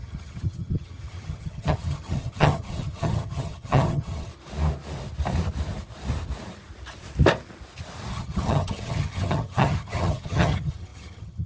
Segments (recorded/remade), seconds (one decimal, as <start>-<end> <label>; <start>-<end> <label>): 0.0-4.3 remade; 4.3-8.1 recorded; 8.1-11.5 remade